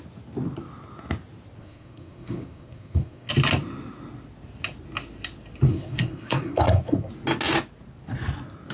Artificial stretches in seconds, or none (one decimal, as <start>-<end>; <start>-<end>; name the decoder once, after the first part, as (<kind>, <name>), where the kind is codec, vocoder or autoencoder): 1.6-3.3 (codec, SNAC); 5.7-7.1